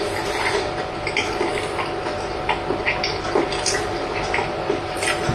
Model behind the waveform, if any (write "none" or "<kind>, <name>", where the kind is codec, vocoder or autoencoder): none